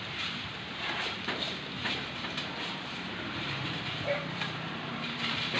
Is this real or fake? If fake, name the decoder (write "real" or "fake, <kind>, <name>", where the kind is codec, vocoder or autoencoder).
fake, vocoder, BigVGAN v2